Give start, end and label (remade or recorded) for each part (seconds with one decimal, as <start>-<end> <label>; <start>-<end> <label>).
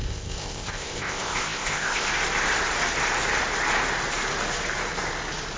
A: 0.0-2.1 remade; 2.1-5.6 recorded